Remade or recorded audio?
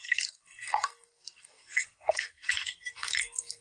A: remade